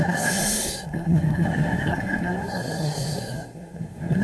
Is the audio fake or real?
fake